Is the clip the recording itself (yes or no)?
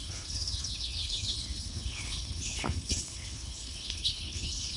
no